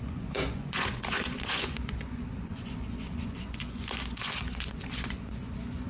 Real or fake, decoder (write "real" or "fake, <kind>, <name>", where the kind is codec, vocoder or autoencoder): fake, vocoder, Vocos